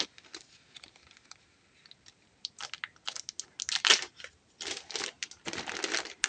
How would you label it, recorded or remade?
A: recorded